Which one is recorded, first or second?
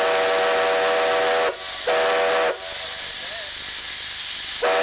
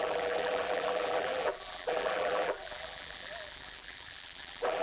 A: first